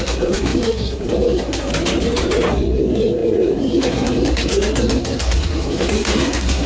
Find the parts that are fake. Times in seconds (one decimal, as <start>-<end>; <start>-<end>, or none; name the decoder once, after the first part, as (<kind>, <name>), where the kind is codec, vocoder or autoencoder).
0.0-1.7 (codec, SNAC); 2.5-6.7